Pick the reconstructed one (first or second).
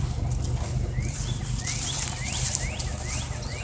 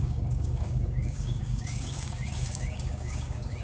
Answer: second